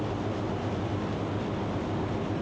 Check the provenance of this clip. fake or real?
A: real